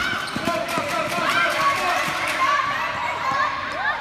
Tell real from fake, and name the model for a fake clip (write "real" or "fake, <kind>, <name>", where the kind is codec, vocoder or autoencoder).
real